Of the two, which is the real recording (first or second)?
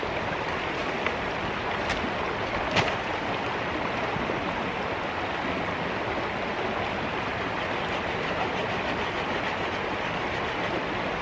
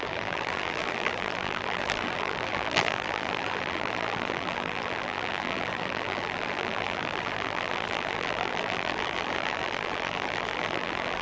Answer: first